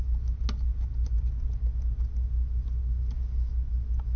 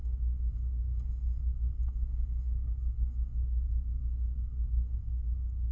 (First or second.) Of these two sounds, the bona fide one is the first